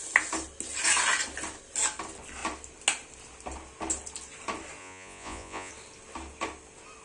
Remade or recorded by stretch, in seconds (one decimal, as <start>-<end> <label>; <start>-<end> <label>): 0.0-4.8 recorded; 4.8-5.7 remade; 5.7-7.0 recorded